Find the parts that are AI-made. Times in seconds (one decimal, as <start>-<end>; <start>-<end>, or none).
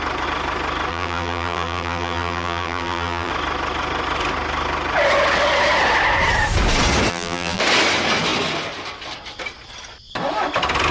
0.9-3.3; 7.1-7.6